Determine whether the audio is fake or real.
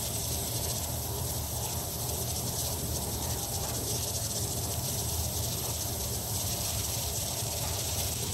fake